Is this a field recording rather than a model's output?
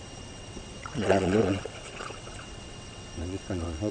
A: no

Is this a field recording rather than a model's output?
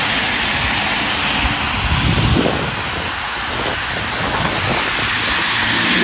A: yes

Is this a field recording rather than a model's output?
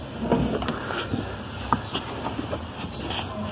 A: yes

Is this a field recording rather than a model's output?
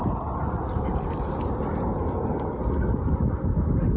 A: yes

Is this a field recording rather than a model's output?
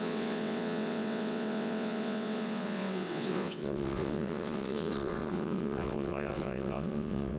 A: no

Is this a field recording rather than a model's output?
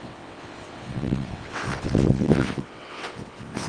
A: no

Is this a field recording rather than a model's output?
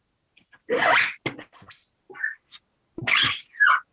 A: yes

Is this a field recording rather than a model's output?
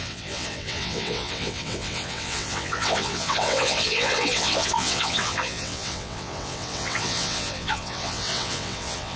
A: no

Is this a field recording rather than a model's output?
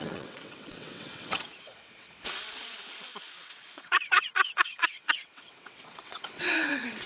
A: no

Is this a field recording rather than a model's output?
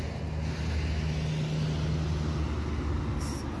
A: yes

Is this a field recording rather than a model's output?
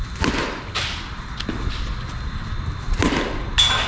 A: yes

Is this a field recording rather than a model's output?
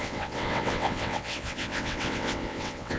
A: no